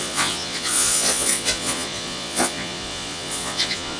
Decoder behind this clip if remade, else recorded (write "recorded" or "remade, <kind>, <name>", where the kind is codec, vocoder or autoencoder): remade, vocoder, Vocos